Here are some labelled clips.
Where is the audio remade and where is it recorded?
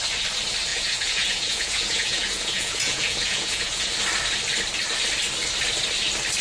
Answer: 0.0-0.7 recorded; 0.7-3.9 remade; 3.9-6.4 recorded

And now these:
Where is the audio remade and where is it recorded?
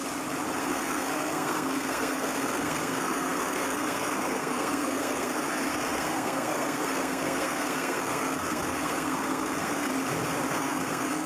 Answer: 0.0-0.6 recorded; 0.6-9.9 remade; 9.9-10.5 recorded; 10.5-11.3 remade